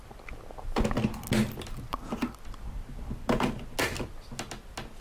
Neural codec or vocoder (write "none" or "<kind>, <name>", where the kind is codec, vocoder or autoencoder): none